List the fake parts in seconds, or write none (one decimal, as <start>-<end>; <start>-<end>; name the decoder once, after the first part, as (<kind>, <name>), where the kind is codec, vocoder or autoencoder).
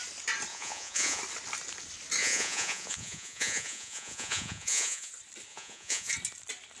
0.5-1.2 (vocoder, Vocos); 2.2-5.1; 5.5-6.1